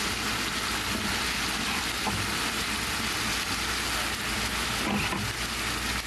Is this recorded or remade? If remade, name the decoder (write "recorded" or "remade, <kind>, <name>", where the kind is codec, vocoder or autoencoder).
recorded